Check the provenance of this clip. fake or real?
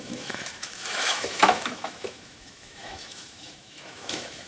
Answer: fake